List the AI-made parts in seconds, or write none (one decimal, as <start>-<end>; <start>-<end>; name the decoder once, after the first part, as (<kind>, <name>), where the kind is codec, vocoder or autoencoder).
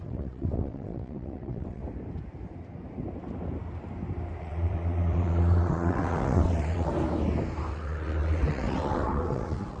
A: 0.0-1.8 (vocoder, WaveNeXt); 4.4-6.9; 7.7-9.8